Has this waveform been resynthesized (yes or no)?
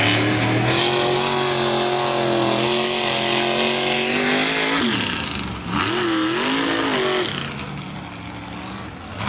no